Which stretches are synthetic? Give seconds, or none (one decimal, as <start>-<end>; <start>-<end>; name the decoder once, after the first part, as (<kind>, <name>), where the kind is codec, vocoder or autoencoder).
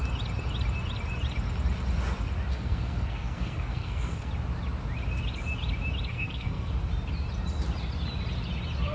2.5-4.3 (codec, SNAC); 6.1-6.7